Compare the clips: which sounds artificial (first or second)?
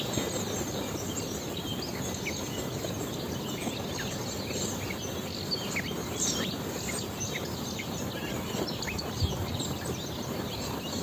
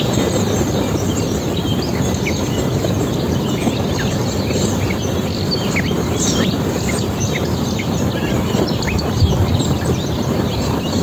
second